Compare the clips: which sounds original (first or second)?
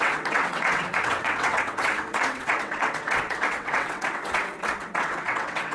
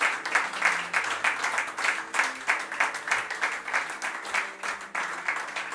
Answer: second